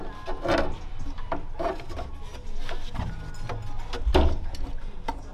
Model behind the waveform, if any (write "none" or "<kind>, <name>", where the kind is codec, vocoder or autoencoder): none